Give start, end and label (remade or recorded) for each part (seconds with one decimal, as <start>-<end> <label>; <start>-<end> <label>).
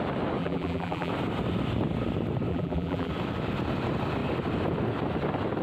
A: 0.0-0.4 recorded; 0.4-1.1 remade; 1.1-2.5 recorded; 2.5-3.1 remade; 3.1-5.6 recorded